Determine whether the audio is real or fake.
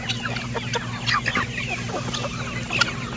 real